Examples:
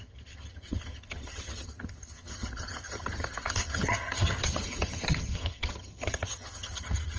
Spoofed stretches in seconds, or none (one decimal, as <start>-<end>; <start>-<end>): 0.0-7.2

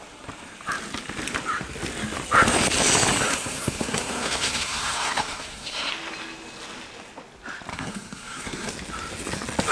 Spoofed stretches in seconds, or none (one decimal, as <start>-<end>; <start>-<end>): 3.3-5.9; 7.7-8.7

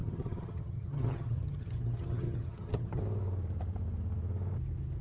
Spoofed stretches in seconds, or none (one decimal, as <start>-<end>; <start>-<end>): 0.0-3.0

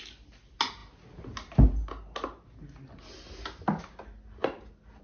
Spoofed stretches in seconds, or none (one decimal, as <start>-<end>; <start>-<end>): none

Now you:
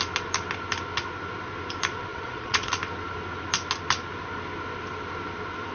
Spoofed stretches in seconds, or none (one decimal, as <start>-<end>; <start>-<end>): 2.1-2.7

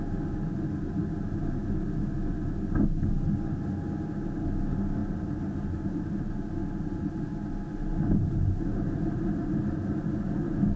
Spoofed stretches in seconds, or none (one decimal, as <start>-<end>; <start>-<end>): 5.0-6.3; 7.9-9.7